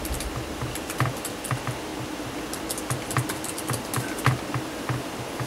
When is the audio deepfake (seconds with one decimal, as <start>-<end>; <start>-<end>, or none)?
none